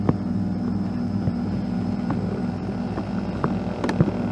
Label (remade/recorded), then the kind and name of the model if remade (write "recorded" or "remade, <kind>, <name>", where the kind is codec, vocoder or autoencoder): recorded